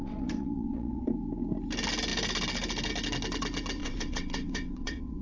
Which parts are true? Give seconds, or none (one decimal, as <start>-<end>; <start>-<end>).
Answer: 1.1-3.8